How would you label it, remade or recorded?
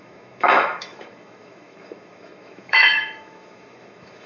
remade